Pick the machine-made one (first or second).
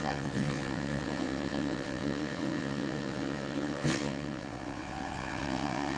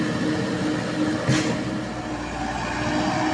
first